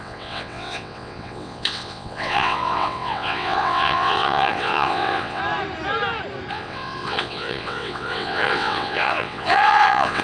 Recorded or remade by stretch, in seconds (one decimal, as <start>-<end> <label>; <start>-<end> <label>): 0.0-5.4 remade; 5.4-6.5 recorded; 6.5-10.2 remade